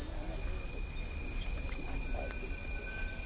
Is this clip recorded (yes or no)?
yes